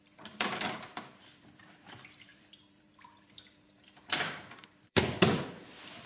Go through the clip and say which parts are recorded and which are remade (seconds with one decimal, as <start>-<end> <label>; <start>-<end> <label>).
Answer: 0.0-6.1 remade